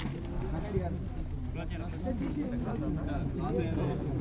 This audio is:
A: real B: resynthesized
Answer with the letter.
A